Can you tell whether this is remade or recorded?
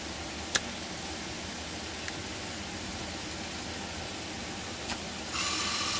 recorded